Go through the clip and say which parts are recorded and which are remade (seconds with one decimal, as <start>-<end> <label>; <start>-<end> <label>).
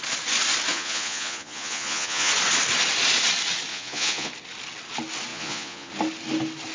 0.0-0.7 recorded; 0.7-2.3 remade; 2.3-3.7 recorded; 3.7-4.3 remade; 4.3-5.3 recorded; 5.3-5.9 remade; 5.9-6.7 recorded